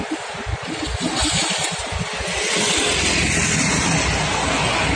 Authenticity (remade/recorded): recorded